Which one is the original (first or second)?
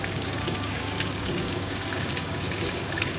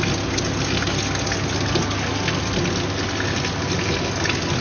second